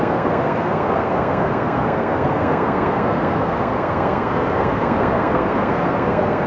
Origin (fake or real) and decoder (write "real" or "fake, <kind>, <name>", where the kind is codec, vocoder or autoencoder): fake, codec, SNAC